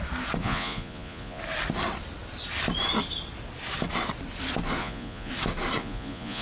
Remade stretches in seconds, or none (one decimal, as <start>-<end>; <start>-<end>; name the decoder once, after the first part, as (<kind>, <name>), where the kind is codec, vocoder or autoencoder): 0.4-1.4 (vocoder, Vocos); 4.8-5.3; 5.8-6.4